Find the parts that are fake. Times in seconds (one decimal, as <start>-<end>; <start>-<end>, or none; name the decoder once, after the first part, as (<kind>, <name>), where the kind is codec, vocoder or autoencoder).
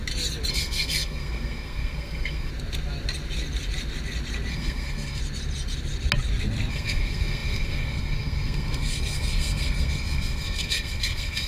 0.5-2.5 (codec, SNAC); 4.5-5.2; 6.7-11.5